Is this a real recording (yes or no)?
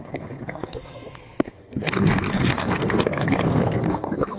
no